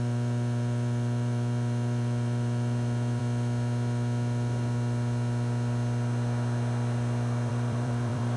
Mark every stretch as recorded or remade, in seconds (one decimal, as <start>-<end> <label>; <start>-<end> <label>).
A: 0.0-3.2 remade; 3.2-7.5 recorded; 7.5-8.4 remade